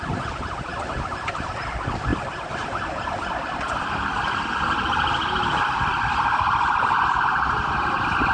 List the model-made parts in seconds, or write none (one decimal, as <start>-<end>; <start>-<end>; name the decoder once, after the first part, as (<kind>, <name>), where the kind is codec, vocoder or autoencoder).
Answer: 0.7-1.5 (vocoder, BigVGAN v2); 2.1-7.0